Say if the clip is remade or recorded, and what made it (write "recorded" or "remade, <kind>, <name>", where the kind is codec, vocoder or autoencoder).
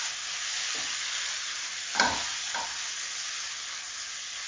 recorded